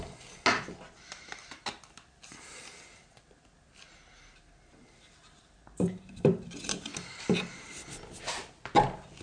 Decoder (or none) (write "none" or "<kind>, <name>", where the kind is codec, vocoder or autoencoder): none